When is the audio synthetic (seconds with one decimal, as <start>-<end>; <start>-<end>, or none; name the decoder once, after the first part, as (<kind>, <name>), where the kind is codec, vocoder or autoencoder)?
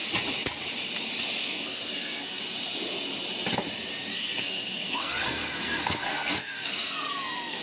1.4-2.4 (codec, SNAC); 4.1-7.6